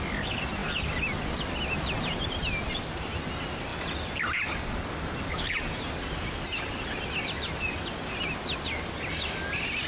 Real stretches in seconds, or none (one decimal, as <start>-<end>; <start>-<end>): 0.0-9.9